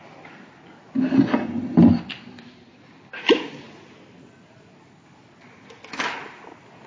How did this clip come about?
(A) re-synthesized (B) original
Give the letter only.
B